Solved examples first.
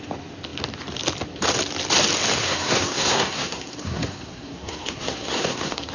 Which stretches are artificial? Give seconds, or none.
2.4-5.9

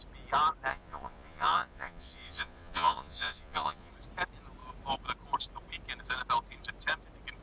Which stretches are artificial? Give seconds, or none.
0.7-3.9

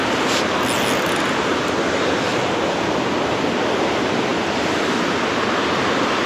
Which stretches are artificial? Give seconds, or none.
2.3-3.9